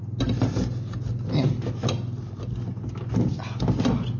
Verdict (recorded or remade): recorded